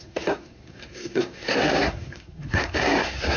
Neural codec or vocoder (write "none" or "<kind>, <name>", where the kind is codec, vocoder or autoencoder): codec, SNAC